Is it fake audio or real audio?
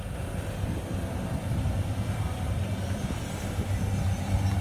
real